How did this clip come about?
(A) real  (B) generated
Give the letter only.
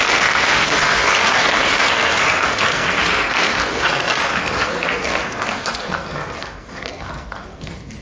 B